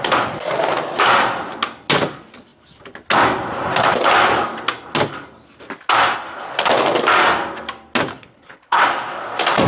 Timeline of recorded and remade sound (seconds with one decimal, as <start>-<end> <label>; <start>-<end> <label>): 0.0-8.1 recorded; 8.1-8.8 remade; 8.8-9.7 recorded